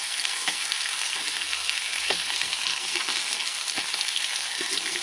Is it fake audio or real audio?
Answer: fake